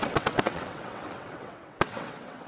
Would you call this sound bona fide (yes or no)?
no